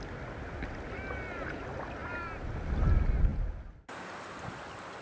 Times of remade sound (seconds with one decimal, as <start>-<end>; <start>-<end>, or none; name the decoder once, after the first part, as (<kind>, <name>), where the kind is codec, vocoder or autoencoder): none